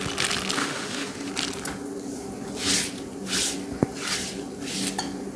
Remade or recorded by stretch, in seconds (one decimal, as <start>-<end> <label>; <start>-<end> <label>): 0.0-0.6 recorded; 0.6-1.3 remade; 1.3-5.4 recorded